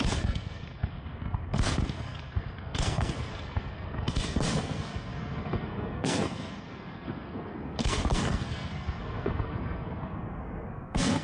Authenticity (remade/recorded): remade